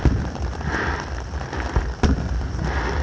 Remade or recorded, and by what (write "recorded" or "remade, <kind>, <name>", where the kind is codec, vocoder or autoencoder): remade, vocoder, BigVGAN v2